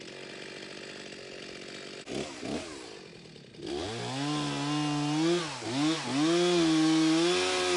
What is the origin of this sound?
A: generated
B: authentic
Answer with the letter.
B